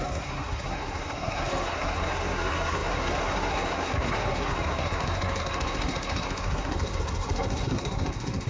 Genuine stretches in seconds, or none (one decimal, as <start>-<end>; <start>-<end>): none